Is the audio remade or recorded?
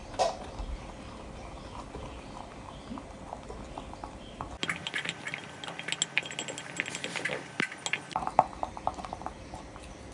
recorded